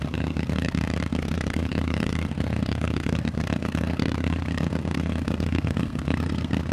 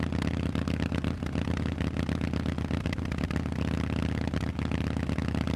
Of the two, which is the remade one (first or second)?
first